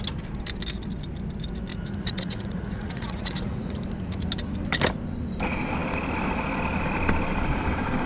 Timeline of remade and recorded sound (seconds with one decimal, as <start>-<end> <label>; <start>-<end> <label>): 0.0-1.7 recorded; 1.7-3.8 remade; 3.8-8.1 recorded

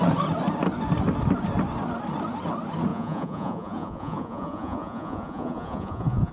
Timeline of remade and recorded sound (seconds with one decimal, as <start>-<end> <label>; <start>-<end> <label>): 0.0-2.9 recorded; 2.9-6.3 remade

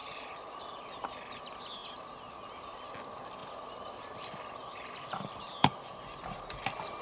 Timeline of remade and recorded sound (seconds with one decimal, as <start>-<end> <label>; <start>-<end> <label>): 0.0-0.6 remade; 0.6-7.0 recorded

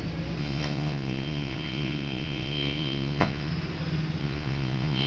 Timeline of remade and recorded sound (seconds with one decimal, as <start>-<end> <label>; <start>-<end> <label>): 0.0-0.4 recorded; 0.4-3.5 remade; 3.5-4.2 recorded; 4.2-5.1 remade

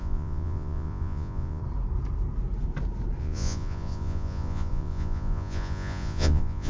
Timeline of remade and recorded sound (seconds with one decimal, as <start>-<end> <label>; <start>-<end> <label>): 0.0-1.6 remade; 1.6-3.2 recorded; 3.2-6.7 remade

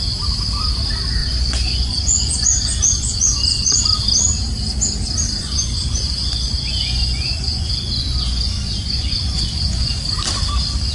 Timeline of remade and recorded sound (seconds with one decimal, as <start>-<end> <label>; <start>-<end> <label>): 0.0-1.2 recorded; 1.2-3.8 remade; 3.8-5.4 recorded; 5.4-10.0 remade; 10.0-10.9 recorded

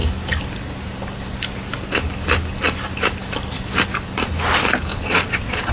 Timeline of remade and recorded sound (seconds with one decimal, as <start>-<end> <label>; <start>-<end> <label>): 0.0-4.9 recorded; 4.9-5.7 remade

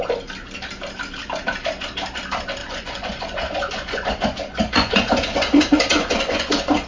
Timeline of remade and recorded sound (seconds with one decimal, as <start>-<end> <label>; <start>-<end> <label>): 0.0-2.6 recorded; 2.6-6.9 remade